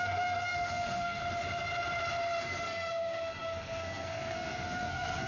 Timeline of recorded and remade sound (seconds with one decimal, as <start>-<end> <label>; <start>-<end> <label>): 0.0-1.2 remade; 1.2-2.4 recorded; 2.4-5.3 remade